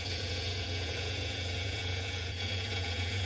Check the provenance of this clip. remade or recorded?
remade